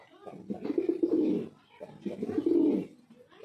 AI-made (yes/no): no